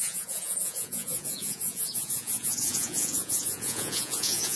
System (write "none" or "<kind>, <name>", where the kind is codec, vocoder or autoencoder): vocoder, Vocos